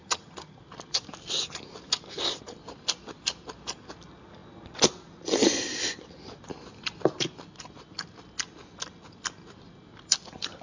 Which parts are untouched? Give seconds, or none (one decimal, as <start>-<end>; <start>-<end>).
0.6-10.6